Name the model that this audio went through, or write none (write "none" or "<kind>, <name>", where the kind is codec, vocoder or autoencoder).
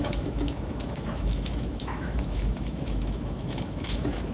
autoencoder, DAC-VAE